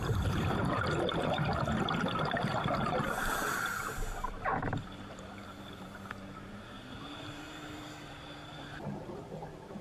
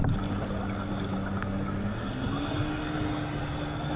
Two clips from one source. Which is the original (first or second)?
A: second